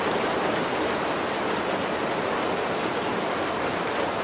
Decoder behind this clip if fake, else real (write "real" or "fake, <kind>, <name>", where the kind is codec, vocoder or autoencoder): real